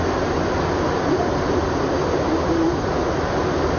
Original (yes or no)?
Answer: yes